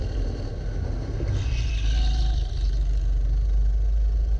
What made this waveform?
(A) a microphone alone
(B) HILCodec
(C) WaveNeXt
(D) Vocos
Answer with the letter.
A